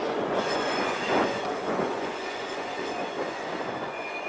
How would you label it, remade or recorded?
remade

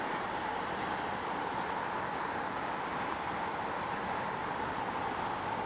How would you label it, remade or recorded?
recorded